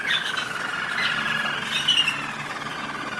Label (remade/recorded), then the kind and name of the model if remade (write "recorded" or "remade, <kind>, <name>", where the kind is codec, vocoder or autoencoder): recorded